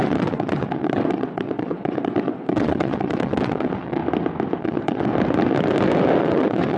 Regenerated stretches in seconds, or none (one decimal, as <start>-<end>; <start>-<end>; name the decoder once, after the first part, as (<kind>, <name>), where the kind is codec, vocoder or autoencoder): 0.0-4.0 (vocoder, WaveNeXt); 4.6-5.1; 6.2-6.8